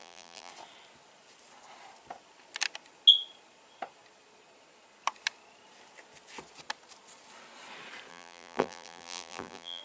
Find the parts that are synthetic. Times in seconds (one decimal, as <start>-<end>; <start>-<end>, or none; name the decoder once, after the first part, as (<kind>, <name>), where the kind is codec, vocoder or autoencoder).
0.0-0.5 (vocoder, BigVGAN v2); 8.1-9.8